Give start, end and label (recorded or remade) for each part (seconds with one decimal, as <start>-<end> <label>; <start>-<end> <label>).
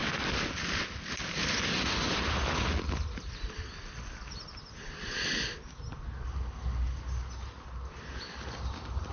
0.0-9.1 recorded